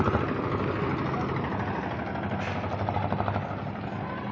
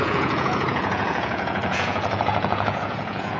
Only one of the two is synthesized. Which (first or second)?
second